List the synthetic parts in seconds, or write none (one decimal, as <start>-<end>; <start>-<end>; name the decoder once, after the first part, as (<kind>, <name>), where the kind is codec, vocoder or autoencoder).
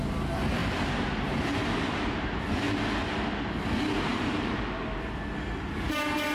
0.6-2.5 (vocoder, BigVGAN v2); 4.1-4.6